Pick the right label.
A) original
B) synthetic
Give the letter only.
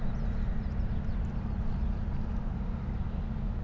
A